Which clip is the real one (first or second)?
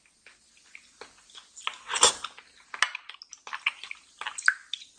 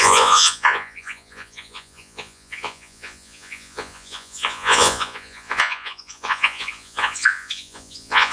first